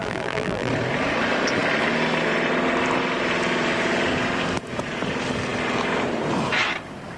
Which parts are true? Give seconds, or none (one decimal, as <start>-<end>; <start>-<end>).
0.7-7.2